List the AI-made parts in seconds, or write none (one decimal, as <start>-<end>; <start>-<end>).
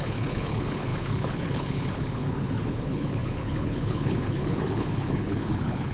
0.0-5.9